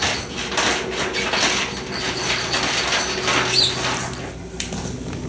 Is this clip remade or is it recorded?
recorded